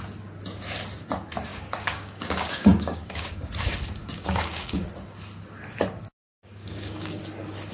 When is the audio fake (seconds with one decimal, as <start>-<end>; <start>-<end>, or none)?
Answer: 1.5-3.5; 4.0-4.8; 6.1-7.2